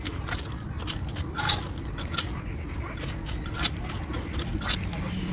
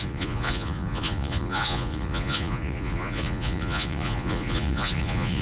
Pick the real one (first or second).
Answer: first